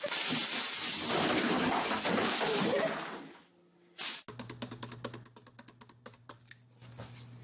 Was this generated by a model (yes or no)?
no